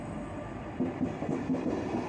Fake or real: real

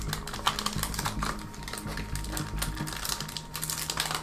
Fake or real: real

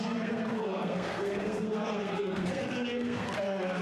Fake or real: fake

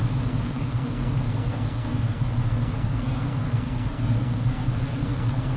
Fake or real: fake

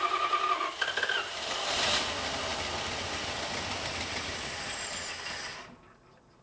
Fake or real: real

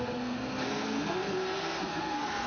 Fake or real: fake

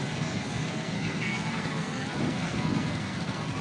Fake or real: fake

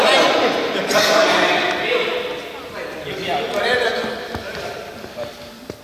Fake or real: real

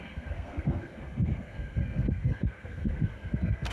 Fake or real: fake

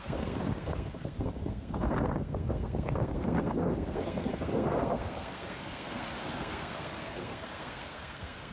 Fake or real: fake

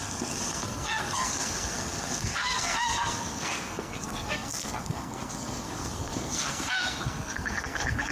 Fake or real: fake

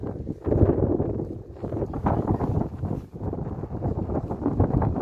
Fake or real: real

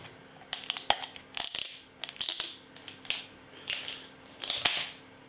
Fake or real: real